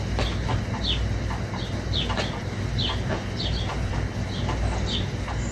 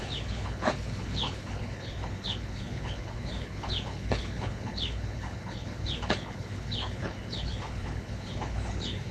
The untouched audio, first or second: first